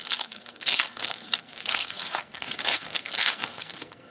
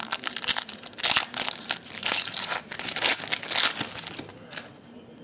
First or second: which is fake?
first